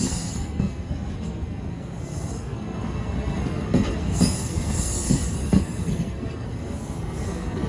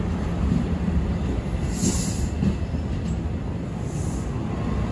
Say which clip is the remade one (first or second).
first